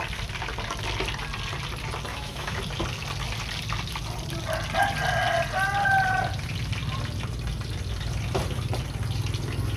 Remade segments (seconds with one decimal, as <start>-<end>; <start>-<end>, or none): 2.1-2.6